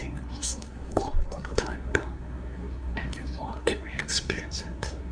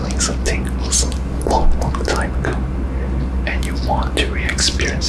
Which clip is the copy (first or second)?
first